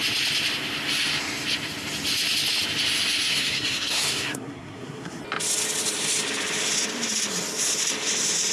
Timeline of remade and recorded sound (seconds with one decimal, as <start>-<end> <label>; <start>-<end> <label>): 0.0-3.3 recorded; 3.3-5.2 remade; 5.2-8.5 recorded